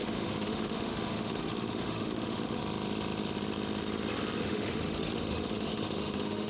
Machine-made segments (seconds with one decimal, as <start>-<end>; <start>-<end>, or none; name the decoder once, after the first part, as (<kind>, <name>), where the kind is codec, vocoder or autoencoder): 0.0-2.6 (autoencoder, DAC-VAE); 4.4-6.5